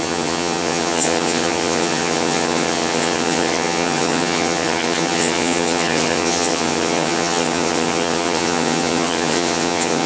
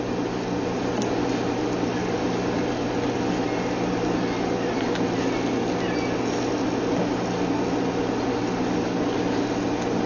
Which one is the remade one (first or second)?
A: first